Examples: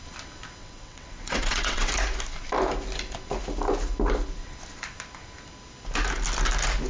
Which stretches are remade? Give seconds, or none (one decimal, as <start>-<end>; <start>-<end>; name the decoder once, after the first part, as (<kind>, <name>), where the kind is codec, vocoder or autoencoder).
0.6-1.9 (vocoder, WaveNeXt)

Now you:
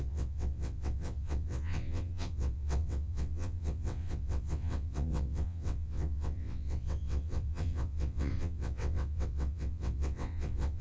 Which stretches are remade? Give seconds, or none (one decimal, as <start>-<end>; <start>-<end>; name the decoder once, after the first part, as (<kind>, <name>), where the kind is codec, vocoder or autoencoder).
0.0-10.8 (vocoder, WaveNeXt)

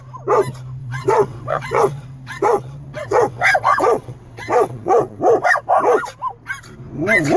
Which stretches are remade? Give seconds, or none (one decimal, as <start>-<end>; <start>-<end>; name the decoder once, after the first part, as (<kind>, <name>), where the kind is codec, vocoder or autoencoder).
0.8-5.2 (vocoder, WaveNeXt)

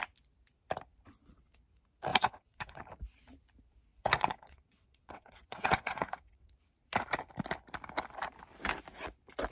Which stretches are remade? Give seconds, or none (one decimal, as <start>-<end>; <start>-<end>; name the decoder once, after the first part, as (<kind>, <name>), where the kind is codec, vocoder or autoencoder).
2.1-2.8 (vocoder, WaveNeXt); 3.9-6.5